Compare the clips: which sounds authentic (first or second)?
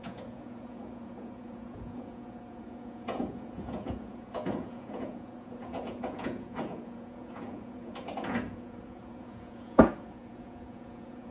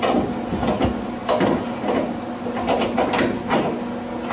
second